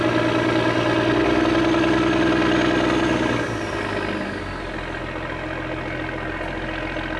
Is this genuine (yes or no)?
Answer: yes